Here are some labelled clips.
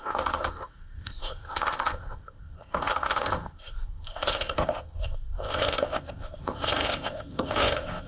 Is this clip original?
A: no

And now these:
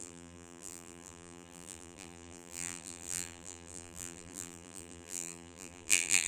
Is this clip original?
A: no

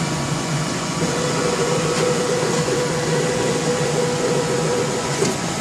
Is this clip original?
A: no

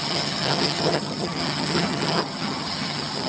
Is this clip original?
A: no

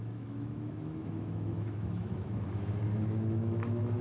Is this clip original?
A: no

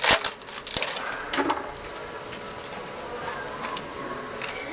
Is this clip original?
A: yes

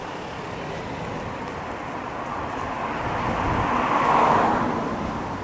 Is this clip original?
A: yes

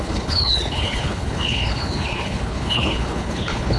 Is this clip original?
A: no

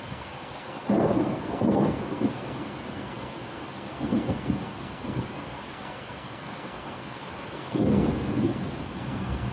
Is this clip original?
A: no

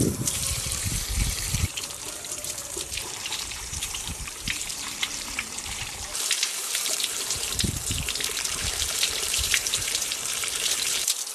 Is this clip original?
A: no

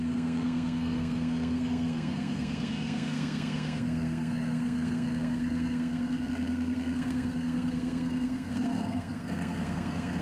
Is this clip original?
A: no